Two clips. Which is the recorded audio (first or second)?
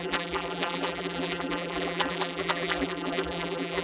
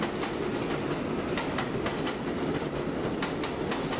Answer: second